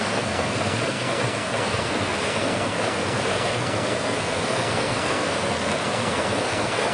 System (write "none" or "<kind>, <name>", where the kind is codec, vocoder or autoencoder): codec, SNAC